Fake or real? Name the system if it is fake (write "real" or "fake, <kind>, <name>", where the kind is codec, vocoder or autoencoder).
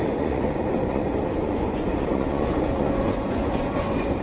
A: fake, vocoder, Vocos